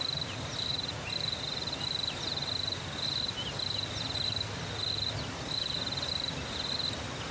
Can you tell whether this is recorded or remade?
recorded